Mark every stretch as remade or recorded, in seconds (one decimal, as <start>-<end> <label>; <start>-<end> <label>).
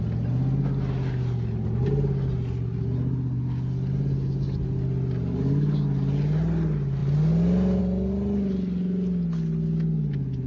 0.0-10.5 recorded